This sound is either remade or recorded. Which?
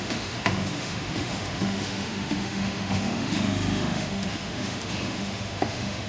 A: remade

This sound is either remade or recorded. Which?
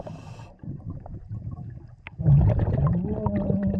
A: recorded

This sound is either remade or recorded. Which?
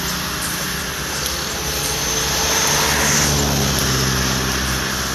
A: recorded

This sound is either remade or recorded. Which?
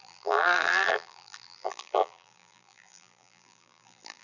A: remade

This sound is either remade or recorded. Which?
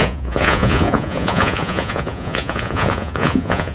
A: remade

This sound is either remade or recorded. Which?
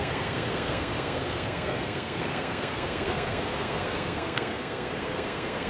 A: remade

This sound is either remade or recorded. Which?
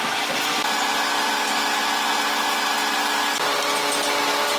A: recorded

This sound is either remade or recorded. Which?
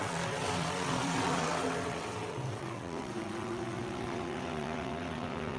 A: remade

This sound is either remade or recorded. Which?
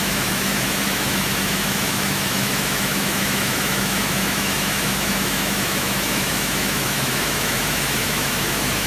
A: remade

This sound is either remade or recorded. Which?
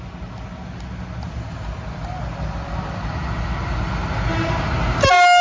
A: recorded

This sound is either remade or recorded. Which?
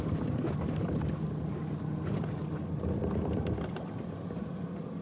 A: recorded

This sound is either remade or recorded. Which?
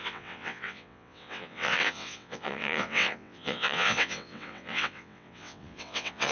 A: remade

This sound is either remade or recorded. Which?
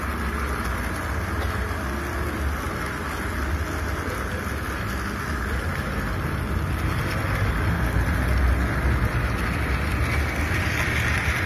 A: recorded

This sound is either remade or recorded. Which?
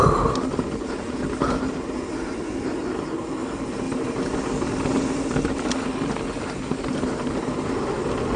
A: recorded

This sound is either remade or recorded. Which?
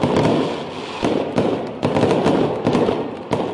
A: recorded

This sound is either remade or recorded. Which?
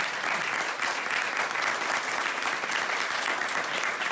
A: recorded